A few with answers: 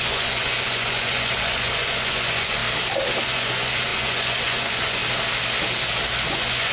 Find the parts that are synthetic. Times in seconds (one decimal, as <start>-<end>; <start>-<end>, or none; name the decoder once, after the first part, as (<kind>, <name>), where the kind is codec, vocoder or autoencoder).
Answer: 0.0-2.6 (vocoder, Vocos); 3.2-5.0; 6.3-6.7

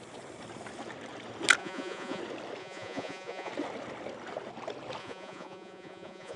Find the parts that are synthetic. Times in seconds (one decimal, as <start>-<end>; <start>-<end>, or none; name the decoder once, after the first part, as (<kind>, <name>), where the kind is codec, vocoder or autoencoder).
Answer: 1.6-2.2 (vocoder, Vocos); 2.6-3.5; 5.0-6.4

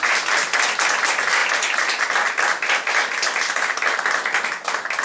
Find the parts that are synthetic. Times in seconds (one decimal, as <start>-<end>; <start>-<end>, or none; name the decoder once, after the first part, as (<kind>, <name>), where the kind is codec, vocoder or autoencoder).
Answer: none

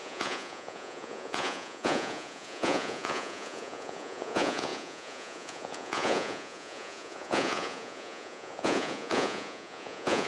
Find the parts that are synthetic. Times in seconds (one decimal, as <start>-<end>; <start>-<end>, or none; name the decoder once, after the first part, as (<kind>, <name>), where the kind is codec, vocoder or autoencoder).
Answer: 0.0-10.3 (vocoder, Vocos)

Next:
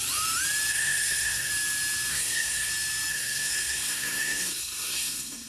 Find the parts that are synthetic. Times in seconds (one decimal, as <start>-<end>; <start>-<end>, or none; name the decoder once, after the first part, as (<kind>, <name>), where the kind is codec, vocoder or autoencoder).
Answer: 0.7-1.5 (codec, SNAC); 2.1-2.7; 3.1-5.5

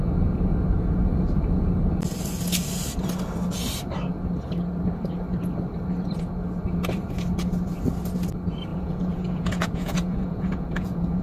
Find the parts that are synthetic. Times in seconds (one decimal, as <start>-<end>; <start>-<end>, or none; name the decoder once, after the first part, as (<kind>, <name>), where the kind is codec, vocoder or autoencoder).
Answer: 8.7-11.2 (vocoder, Vocos)

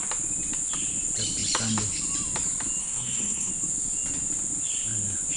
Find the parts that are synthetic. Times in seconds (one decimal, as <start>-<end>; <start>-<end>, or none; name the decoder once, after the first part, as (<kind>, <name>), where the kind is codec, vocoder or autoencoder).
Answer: 2.8-3.5 (codec, SNAC)